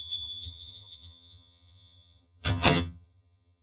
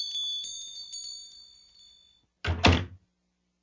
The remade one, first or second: first